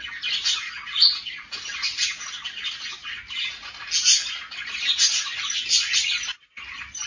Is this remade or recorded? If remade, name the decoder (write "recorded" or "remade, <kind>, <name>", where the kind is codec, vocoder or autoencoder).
recorded